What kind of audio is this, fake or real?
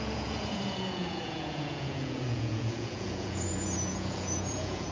fake